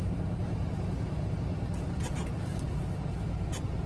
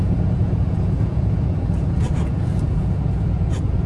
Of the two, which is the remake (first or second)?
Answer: second